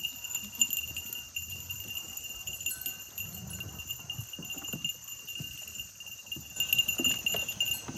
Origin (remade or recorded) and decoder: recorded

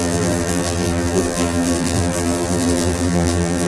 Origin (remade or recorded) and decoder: remade, vocoder, BigVGAN v2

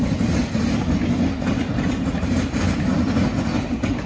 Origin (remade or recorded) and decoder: recorded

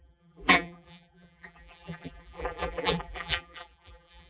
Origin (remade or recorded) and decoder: remade, vocoder, BigVGAN v2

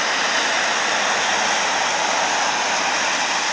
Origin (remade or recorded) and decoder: recorded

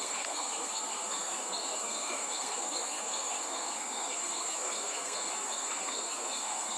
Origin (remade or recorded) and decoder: remade, codec, SNAC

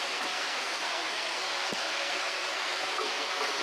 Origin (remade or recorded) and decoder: remade, codec, SNAC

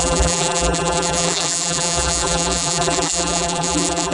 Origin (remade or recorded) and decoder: remade, vocoder, BigVGAN v2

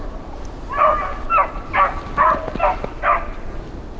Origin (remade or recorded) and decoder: recorded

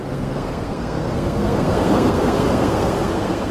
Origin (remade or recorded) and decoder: remade, codec, SNAC